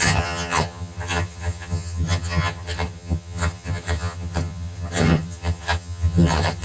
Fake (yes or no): yes